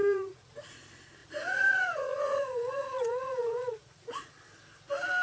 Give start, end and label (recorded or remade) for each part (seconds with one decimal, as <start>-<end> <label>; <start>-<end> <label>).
0.0-0.7 remade; 0.7-1.2 recorded; 1.2-4.3 remade; 4.3-5.2 recorded